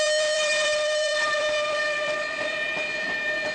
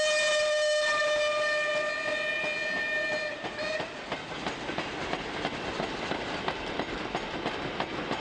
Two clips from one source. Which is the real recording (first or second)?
second